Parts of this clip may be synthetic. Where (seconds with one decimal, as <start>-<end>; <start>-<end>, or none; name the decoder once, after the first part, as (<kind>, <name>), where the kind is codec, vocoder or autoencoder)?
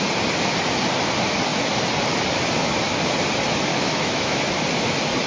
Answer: 3.7-4.4 (autoencoder, DAC-VAE)